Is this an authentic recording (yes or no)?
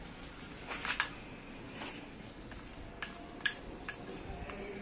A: yes